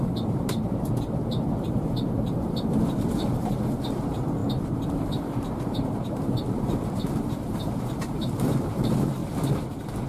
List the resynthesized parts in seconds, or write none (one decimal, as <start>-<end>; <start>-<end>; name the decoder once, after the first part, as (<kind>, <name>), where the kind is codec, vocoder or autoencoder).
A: 0.0-9.2 (vocoder, BigVGAN v2)